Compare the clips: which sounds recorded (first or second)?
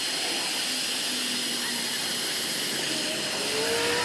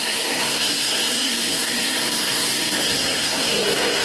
first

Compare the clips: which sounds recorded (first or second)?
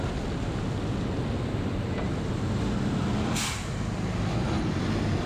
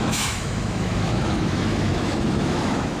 first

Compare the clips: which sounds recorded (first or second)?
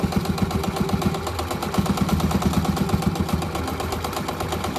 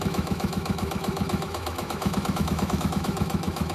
first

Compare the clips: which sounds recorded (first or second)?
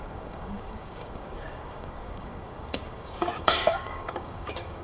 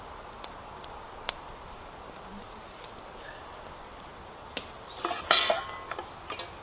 second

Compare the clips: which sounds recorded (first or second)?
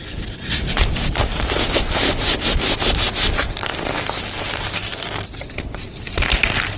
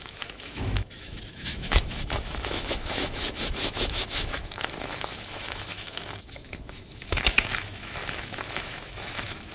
first